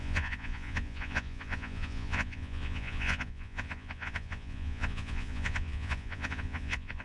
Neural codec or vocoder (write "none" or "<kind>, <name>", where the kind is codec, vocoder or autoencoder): vocoder, Vocos